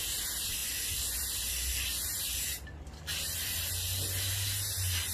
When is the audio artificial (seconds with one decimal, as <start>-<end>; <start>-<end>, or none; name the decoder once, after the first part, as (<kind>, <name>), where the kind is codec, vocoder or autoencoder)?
0.6-3.7 (vocoder, BigVGAN v2)